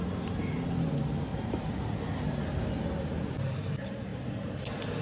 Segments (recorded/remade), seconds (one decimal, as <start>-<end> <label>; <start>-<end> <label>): 0.0-1.3 recorded; 1.3-1.8 remade; 1.8-4.1 recorded; 4.1-4.6 remade; 4.6-5.0 recorded

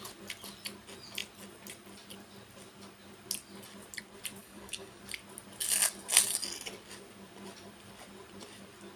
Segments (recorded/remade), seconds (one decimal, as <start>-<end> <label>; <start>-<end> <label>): 0.0-4.4 recorded; 4.4-5.0 remade; 5.0-9.0 recorded

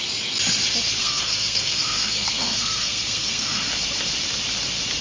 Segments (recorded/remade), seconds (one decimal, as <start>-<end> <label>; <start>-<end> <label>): 0.0-1.0 recorded; 1.0-3.6 remade; 3.6-5.0 recorded

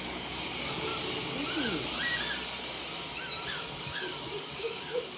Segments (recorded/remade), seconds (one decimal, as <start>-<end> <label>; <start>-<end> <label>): 0.0-0.9 remade; 0.9-3.5 recorded; 3.5-5.2 remade

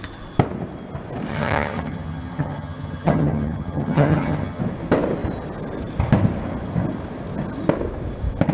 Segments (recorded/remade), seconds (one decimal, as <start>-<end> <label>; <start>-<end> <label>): 0.0-1.3 recorded; 1.3-4.6 remade; 4.6-8.5 recorded

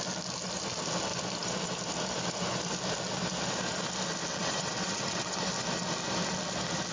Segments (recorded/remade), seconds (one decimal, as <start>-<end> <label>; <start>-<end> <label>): 0.0-4.3 recorded; 4.3-5.5 remade; 5.5-6.9 recorded

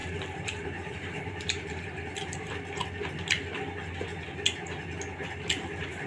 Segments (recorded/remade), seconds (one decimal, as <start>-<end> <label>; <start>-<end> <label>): 0.0-2.5 remade; 2.5-6.1 recorded